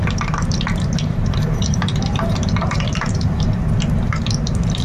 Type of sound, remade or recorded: remade